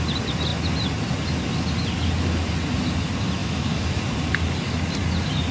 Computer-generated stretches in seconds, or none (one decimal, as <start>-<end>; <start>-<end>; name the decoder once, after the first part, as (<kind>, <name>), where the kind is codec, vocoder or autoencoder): 3.4-4.0 (autoencoder, DAC-VAE)

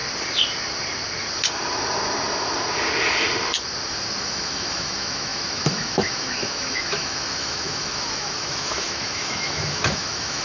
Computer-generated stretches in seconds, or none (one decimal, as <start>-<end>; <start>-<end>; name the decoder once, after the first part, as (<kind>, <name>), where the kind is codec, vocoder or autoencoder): 4.2-10.4 (autoencoder, DAC-VAE)

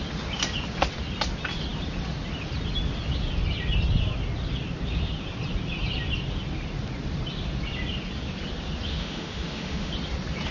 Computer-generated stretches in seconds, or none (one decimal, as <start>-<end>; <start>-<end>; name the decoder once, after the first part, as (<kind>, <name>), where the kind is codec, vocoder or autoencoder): 8.9-9.9 (autoencoder, DAC-VAE)

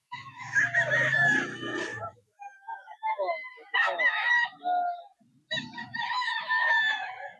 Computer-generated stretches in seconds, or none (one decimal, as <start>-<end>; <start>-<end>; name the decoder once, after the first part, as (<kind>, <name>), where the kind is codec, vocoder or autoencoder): 0.0-0.6 (autoencoder, DAC-VAE); 1.9-4.3; 5.8-6.8